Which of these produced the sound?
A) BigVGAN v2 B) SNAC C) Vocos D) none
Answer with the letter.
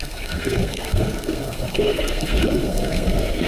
B